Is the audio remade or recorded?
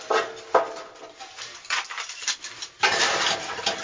recorded